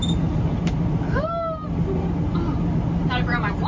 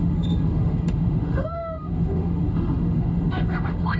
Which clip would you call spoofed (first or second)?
second